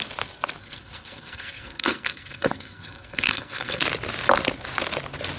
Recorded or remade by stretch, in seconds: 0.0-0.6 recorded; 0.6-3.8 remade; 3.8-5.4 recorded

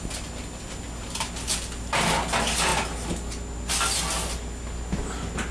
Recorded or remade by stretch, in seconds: 0.0-5.5 recorded

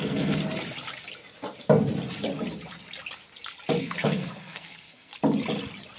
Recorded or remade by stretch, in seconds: 0.0-0.4 remade; 0.4-3.8 recorded; 3.8-5.1 remade; 5.1-6.0 recorded

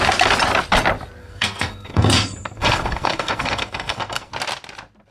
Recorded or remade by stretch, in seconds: 0.0-1.2 recorded; 1.2-4.3 remade; 4.3-5.1 recorded

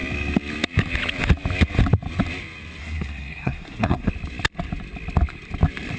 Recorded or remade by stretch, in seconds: 0.0-2.8 recorded; 2.8-4.1 remade; 4.1-6.0 recorded